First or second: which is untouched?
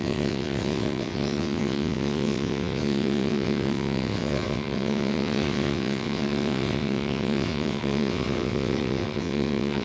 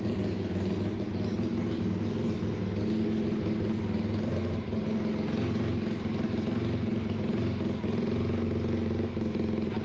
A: second